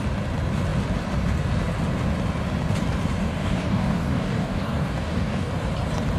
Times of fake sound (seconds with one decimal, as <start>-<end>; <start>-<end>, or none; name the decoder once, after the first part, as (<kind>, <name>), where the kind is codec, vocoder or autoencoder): 3.2-5.5 (codec, DAC)